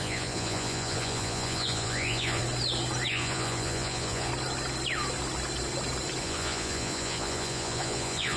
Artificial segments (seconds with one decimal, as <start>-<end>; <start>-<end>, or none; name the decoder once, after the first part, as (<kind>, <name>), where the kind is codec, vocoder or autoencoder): 0.0-2.4 (vocoder, Vocos); 3.1-4.3; 6.2-8.4